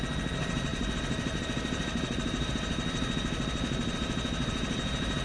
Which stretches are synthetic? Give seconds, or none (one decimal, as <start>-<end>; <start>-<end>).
none